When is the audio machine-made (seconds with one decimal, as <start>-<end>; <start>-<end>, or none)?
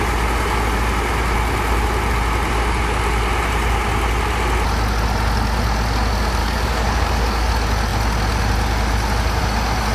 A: 6.4-7.5